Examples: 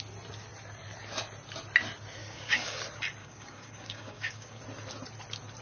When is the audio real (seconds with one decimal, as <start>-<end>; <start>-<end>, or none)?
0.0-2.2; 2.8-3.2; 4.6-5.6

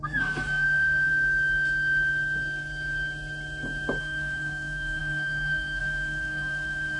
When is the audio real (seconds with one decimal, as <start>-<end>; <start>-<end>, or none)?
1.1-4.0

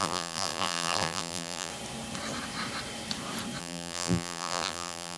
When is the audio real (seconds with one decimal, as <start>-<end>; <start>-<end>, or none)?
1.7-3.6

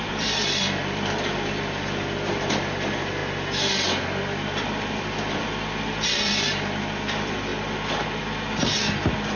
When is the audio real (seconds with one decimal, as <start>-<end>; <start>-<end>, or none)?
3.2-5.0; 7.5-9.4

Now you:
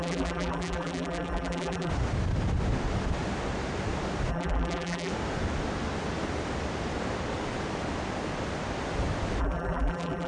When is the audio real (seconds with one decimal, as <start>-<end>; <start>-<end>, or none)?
1.9-4.3; 5.1-9.4

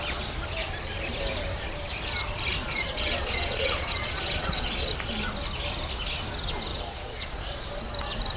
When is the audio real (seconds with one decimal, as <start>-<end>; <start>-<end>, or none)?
0.0-2.6; 4.9-6.7; 7.7-8.4